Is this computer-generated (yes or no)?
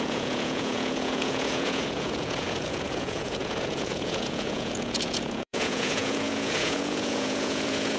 yes